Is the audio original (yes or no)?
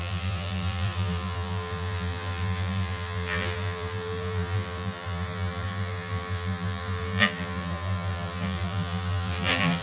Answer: no